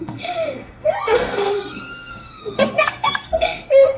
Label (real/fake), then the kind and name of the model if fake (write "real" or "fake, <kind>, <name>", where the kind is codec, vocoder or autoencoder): fake, codec, SNAC